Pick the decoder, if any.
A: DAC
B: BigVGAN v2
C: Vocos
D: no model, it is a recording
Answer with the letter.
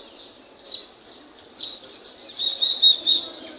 D